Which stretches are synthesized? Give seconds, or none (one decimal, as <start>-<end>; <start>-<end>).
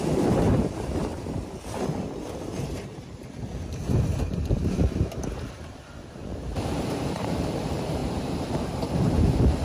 0.0-1.1; 2.5-9.6